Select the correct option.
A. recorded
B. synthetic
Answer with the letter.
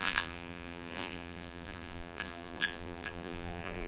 B